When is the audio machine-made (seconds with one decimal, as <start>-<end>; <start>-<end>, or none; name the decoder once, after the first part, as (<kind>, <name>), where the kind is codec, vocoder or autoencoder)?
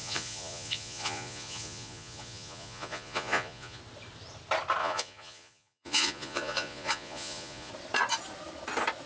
0.0-3.8 (vocoder, Vocos); 4.8-7.7